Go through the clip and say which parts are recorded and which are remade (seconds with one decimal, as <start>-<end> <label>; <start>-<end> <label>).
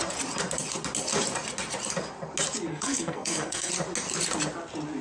0.0-2.7 recorded; 2.7-3.7 remade; 3.7-5.0 recorded